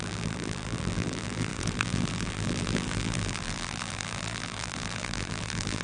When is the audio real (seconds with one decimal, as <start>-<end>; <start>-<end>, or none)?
none